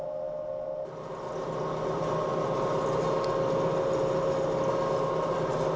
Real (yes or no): yes